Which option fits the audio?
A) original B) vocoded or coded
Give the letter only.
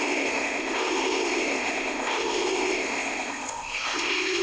B